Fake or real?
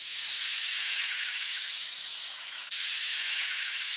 fake